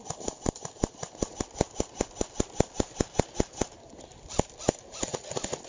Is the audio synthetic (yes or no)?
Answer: no